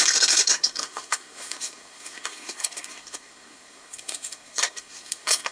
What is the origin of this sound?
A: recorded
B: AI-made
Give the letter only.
B